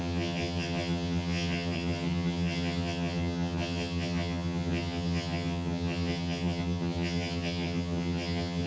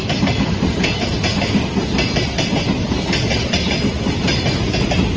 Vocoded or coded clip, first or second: first